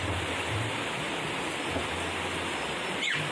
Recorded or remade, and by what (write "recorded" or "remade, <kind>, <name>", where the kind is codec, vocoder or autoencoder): recorded